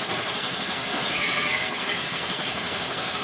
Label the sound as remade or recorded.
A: remade